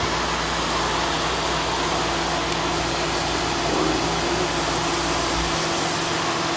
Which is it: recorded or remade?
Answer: recorded